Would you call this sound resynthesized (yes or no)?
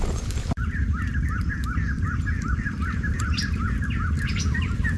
yes